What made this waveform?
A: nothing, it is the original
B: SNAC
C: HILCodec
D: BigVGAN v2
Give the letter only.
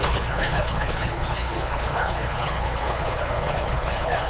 C